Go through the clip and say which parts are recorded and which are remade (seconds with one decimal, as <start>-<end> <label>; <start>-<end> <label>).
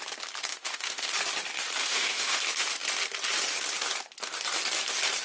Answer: 0.0-0.5 recorded; 0.5-1.1 remade; 1.1-1.8 recorded; 1.8-2.4 remade; 2.4-5.2 recorded